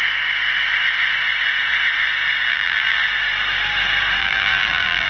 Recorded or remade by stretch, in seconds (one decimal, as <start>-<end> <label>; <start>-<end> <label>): 0.0-2.5 recorded; 2.5-3.0 remade; 3.0-4.2 recorded; 4.2-5.1 remade